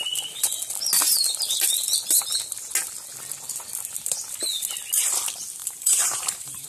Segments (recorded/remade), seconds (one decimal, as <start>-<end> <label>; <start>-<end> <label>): 0.0-5.6 recorded; 5.6-6.7 remade